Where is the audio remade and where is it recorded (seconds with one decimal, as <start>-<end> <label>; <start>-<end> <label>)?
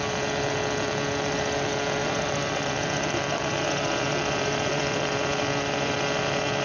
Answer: 0.0-2.0 recorded; 2.0-5.1 remade; 5.1-6.6 recorded